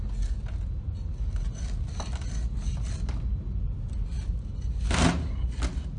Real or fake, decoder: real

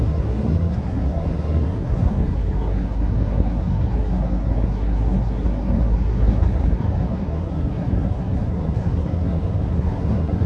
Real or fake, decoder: fake, codec, SNAC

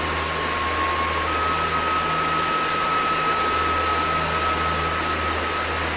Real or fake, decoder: real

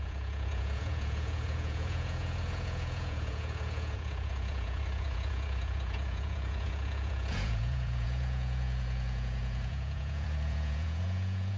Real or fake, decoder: fake, vocoder, Vocos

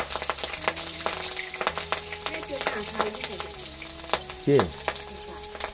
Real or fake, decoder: real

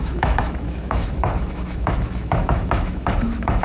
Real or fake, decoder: fake, autoencoder, DAC-VAE